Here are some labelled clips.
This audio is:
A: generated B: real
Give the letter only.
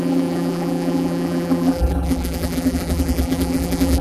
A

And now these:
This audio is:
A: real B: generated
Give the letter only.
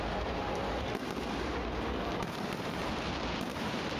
A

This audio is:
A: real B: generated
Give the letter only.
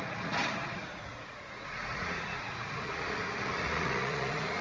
B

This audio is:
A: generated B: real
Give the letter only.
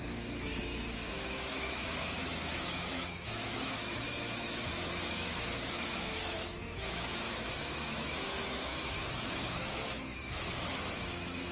A